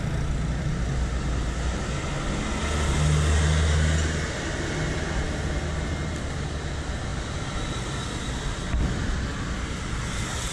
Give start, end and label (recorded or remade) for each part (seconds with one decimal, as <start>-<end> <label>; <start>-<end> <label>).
0.0-10.5 recorded

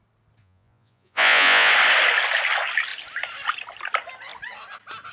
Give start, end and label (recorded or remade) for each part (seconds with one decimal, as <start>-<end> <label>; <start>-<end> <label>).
0.0-0.4 recorded; 0.4-1.7 remade; 1.7-5.1 recorded

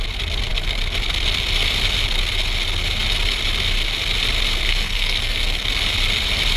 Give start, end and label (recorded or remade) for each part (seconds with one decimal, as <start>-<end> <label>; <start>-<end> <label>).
0.0-4.7 recorded; 4.7-5.7 remade; 5.7-6.6 recorded

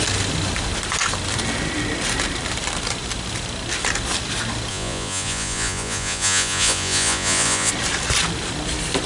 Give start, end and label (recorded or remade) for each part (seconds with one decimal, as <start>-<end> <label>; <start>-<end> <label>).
0.0-4.7 recorded; 4.7-7.7 remade; 7.7-9.1 recorded

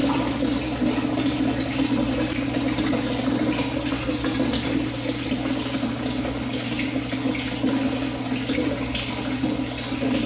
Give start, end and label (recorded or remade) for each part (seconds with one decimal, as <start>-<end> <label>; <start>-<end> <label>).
0.0-10.3 recorded